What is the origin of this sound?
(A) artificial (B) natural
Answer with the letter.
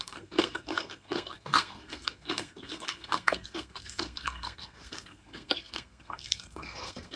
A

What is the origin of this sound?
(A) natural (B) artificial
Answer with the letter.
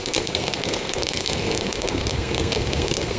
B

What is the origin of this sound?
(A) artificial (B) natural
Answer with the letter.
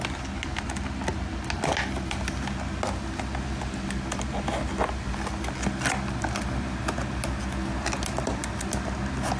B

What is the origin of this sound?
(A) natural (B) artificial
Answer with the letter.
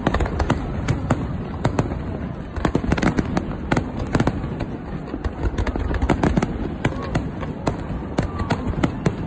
A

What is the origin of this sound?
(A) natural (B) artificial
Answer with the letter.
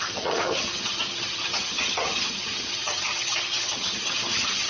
B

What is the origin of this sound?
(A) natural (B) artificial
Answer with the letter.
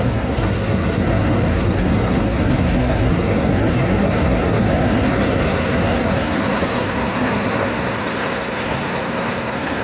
B